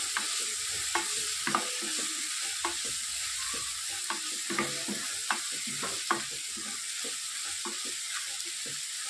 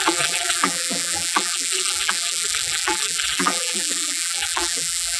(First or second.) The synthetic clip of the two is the second